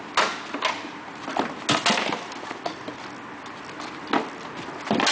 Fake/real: real